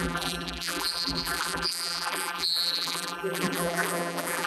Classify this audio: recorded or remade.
remade